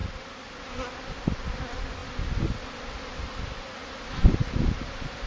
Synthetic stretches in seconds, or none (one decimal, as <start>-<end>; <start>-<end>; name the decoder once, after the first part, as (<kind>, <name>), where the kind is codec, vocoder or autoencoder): none